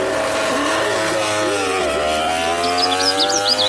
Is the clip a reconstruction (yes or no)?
no